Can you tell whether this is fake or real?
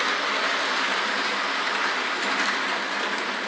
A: real